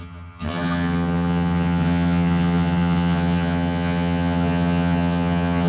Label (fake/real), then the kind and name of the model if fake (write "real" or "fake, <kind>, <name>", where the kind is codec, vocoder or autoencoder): fake, vocoder, HiFi-GAN